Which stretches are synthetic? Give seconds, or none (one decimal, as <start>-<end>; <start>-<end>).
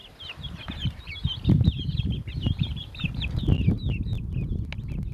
0.0-3.1